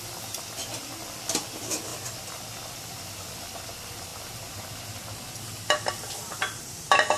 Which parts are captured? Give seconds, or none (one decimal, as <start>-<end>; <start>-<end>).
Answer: 1.9-2.7